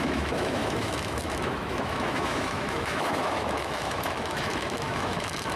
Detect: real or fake fake